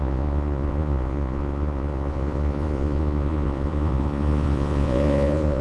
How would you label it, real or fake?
fake